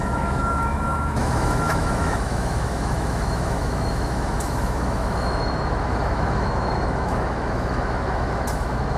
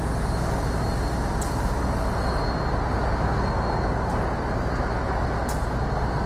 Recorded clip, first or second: second